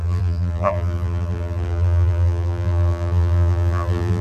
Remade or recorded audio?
remade